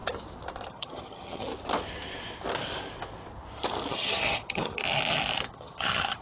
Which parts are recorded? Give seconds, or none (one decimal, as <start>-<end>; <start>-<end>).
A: 0.0-0.7; 1.5-3.9; 4.8-5.5